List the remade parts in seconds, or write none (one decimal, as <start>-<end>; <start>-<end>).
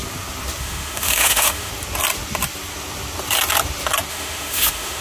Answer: 0.6-1.7; 4.1-5.0